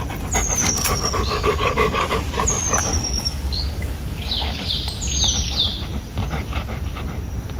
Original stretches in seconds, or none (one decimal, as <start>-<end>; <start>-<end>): 0.0-0.6; 2.3-2.8; 4.7-7.6